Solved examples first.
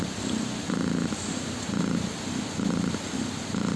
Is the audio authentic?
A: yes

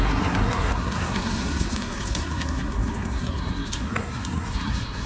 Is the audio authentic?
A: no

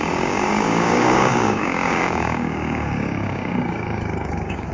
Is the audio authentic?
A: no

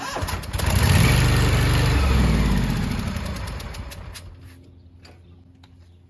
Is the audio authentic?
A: yes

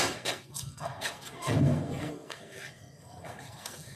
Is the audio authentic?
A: no